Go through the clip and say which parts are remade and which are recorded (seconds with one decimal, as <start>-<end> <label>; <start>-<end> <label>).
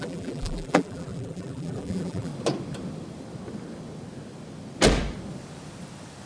0.0-2.3 remade; 2.3-6.3 recorded